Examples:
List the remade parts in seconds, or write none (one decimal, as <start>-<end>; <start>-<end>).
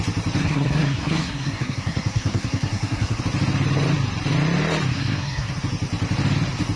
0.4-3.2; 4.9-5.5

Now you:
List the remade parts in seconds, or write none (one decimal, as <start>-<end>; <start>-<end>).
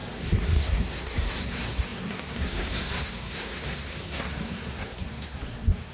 0.0-5.9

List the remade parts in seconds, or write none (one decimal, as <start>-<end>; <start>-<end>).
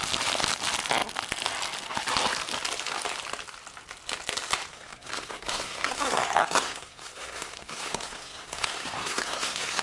4.7-9.8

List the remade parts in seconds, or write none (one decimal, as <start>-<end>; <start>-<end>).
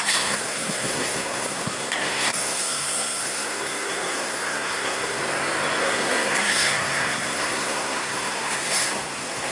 0.0-5.2; 5.8-9.5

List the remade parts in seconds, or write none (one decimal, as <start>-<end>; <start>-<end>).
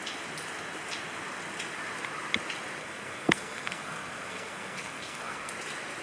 2.8-5.5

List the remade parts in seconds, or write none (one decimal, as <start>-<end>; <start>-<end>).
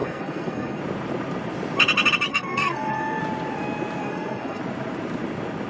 0.0-0.8; 2.3-3.2; 4.0-4.6